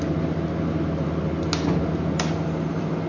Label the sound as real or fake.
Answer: real